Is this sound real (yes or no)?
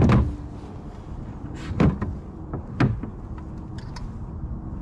yes